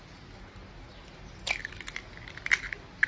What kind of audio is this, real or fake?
real